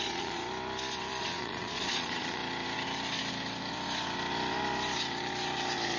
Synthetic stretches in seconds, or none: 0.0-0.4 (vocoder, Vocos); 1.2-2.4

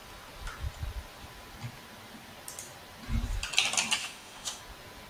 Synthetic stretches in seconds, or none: 4.0-4.6 (autoencoder, DAC-VAE)

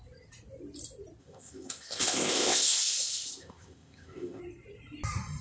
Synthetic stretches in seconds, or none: 1.2-4.4 (codec, ZipCodec)

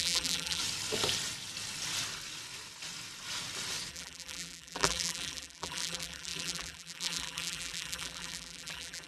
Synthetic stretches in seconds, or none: 0.0-0.6 (vocoder, BigVGAN v2); 3.9-9.1

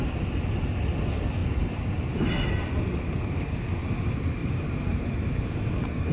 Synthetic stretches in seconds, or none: 4.4-6.1 (vocoder, BigVGAN v2)